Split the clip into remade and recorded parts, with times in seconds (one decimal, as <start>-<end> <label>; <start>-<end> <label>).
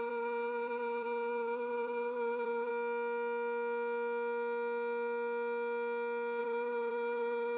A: 0.0-2.7 remade; 2.7-6.4 recorded; 6.4-7.6 remade